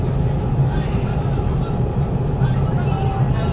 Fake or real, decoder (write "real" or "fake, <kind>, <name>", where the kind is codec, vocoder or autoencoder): real